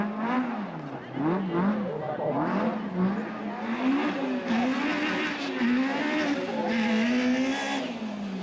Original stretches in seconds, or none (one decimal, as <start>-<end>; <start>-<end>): 0.0-8.4